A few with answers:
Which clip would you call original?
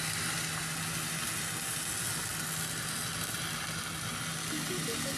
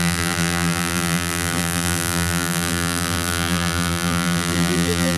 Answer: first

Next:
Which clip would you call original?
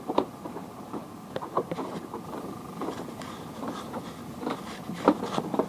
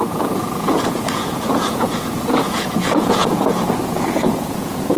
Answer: first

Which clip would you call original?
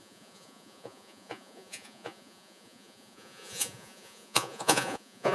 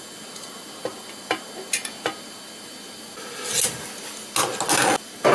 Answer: second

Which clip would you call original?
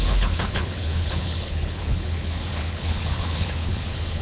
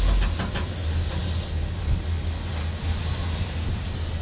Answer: second